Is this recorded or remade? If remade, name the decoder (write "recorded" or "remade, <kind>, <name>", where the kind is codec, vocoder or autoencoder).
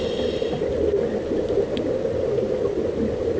recorded